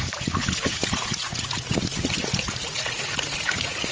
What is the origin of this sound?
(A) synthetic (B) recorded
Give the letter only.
A